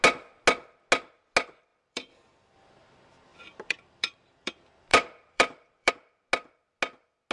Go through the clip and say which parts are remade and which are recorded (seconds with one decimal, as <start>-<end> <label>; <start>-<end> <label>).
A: 0.0-1.7 recorded; 1.7-2.5 remade; 2.5-3.3 recorded; 3.3-4.5 remade; 4.5-4.9 recorded; 4.9-5.9 remade; 5.9-7.3 recorded